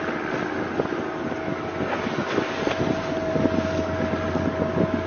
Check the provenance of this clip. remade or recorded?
recorded